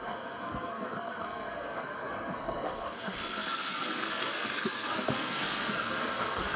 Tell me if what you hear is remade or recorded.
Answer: remade